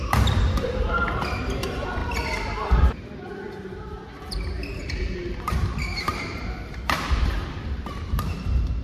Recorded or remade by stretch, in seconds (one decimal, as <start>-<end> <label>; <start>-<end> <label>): 0.0-2.0 remade; 2.0-2.6 recorded; 2.6-8.8 remade